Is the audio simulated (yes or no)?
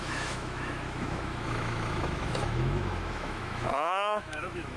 yes